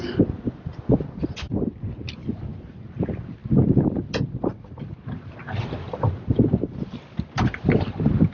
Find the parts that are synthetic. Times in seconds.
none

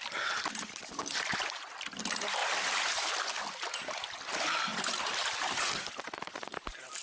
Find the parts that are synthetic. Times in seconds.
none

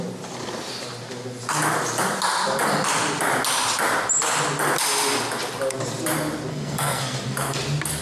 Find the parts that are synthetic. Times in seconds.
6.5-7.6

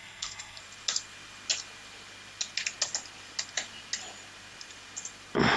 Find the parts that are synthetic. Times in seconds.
0.0-0.6

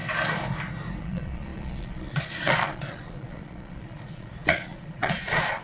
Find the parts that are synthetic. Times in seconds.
1.0-5.6